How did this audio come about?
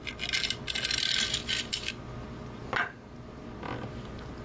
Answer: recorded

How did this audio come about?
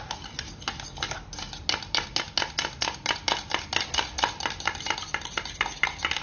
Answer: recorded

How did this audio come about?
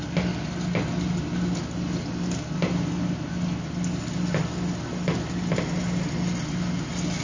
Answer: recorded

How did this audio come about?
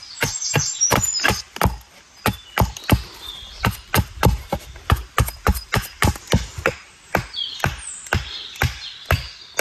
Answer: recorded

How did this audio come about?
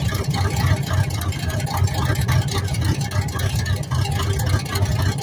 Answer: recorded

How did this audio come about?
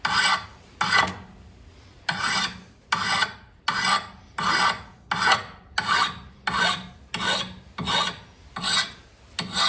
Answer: recorded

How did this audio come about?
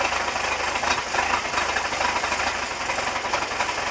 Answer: recorded